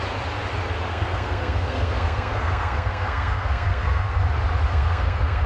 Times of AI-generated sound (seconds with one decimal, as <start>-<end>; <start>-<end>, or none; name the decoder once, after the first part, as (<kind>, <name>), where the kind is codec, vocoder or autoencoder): 0.9-4.2 (codec, SNAC); 4.7-5.5